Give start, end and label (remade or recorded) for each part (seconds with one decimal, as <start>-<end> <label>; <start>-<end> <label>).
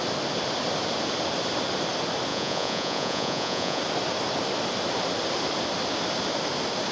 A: 0.0-2.3 recorded; 2.3-3.8 remade; 3.8-6.9 recorded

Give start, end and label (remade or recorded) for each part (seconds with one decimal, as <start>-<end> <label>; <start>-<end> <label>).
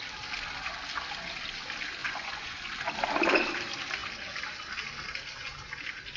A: 0.0-2.0 recorded; 2.0-2.7 remade; 2.7-6.2 recorded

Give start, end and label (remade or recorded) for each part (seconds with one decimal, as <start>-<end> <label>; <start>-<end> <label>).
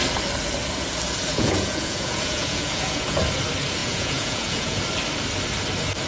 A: 0.0-1.3 recorded; 1.3-3.2 remade; 3.2-3.8 recorded; 3.8-4.8 remade; 4.8-6.1 recorded